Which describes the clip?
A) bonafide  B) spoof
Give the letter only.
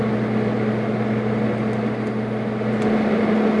A